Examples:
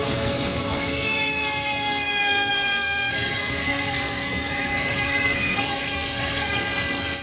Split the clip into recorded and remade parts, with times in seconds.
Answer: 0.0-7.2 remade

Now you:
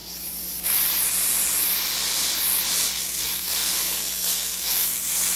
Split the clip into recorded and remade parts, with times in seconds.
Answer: 0.0-3.2 recorded; 3.2-5.4 remade